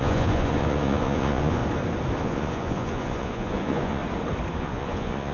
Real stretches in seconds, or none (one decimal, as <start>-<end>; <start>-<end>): 1.6-2.2; 4.0-4.6